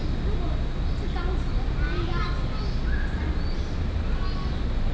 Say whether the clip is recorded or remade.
recorded